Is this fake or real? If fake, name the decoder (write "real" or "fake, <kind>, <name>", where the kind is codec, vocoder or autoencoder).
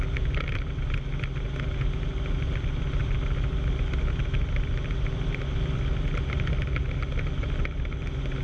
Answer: real